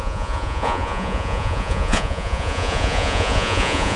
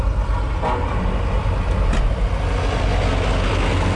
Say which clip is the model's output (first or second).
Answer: first